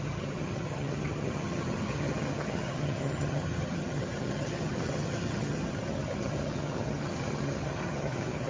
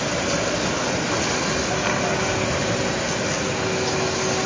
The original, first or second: second